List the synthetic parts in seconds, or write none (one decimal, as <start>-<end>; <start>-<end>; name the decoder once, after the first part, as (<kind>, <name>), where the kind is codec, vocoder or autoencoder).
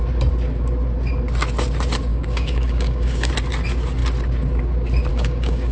2.1-3.3 (codec, DAC); 5.1-5.7